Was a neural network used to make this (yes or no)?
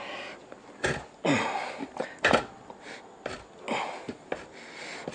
no